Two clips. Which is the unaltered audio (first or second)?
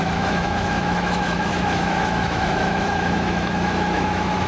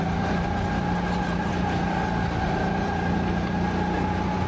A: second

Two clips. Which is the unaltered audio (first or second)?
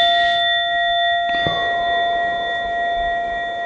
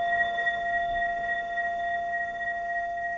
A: first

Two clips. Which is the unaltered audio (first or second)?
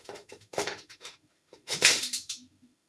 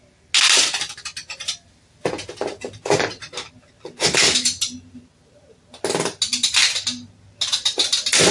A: second